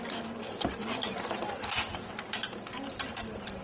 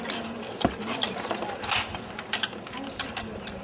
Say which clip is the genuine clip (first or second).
first